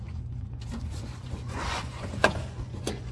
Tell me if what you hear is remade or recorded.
remade